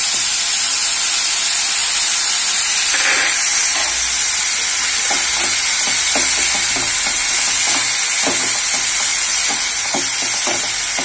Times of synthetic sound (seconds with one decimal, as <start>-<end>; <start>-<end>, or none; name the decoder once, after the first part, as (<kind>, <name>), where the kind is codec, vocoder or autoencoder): 9.1-10.0 (vocoder, Vocos)